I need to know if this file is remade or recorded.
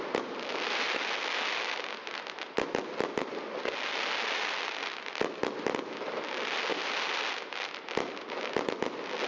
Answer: recorded